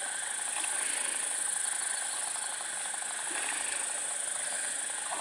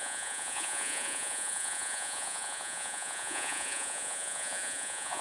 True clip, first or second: first